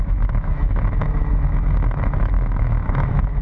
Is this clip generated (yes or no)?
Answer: yes